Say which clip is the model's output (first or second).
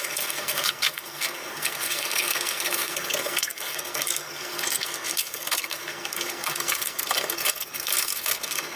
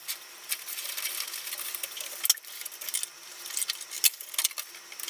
first